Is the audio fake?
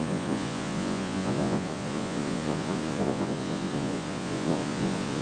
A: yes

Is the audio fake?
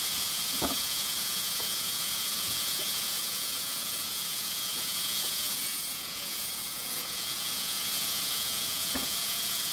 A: yes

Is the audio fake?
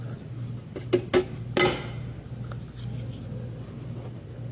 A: no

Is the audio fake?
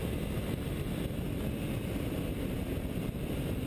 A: no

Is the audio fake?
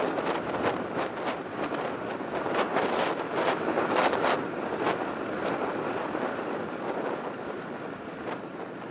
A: no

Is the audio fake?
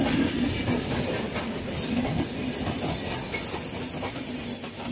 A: no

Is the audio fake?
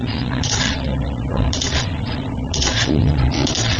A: yes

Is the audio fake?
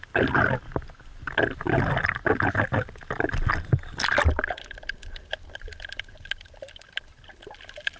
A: no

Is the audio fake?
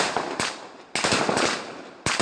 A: no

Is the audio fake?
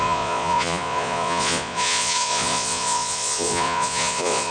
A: yes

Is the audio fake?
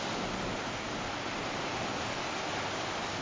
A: no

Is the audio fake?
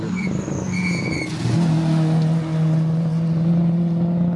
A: no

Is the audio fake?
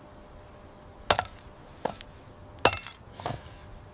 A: no